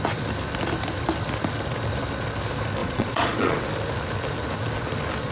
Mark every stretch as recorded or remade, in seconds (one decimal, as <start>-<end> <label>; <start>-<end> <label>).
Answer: 0.0-2.8 recorded; 2.8-3.6 remade; 3.6-5.3 recorded